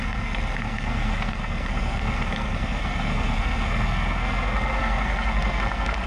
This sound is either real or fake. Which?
fake